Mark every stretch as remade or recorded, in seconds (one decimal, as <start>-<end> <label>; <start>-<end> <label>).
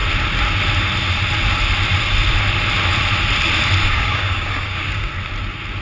0.0-3.8 recorded; 3.8-5.1 remade; 5.1-5.8 recorded